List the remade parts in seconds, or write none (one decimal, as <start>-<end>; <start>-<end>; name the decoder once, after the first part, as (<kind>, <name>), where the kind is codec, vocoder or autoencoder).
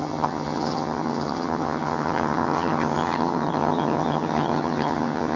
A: 0.0-5.4 (vocoder, HiFi-GAN)